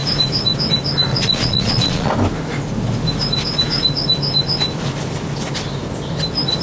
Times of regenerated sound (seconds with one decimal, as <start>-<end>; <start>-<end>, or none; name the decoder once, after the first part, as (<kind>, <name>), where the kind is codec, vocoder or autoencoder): 1.1-2.1 (vocoder, Vocos)